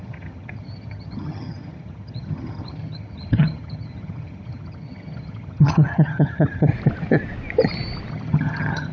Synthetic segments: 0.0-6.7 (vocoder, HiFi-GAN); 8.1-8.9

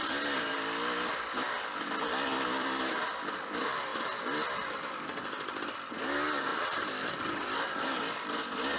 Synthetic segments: 3.9-5.9 (vocoder, BigVGAN v2); 6.5-7.2

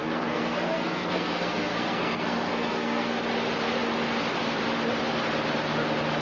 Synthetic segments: 0.0-3.2 (codec, SNAC)

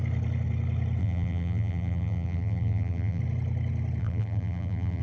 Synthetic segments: 1.0-3.2 (vocoder, BigVGAN v2); 4.0-5.0

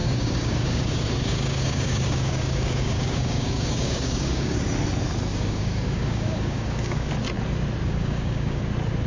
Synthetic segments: 0.0-4.6 (codec, DAC); 5.3-7.1; 7.8-8.6

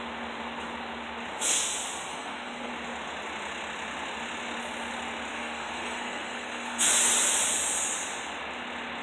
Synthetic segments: 2.1-2.7 (codec, SNAC); 5.3-6.9